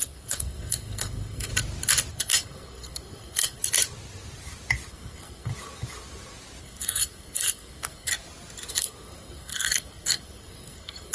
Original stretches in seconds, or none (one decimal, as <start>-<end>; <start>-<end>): 1.5-2.1; 3.6-4.9; 5.5-6.6; 8.1-8.7